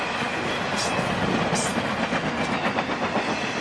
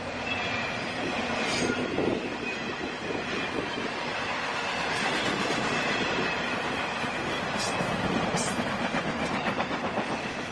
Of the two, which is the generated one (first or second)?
second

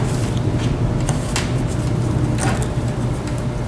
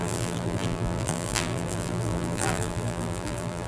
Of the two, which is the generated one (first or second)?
second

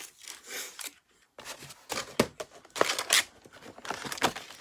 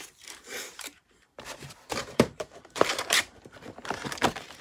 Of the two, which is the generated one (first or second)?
second